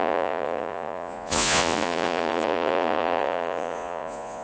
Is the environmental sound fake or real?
fake